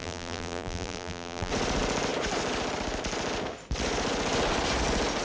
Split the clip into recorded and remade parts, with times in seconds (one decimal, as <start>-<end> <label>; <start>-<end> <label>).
0.0-1.5 remade; 1.5-5.2 recorded